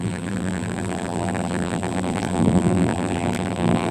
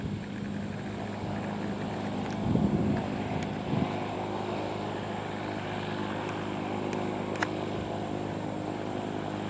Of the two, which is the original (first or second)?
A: second